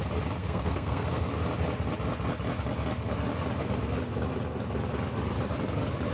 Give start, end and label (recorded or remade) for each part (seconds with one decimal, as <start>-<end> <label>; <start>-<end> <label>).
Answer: 0.0-0.4 recorded; 0.4-1.2 remade; 1.2-6.1 recorded